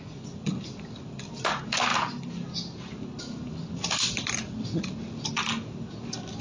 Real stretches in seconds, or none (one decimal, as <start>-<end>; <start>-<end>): 0.0-6.4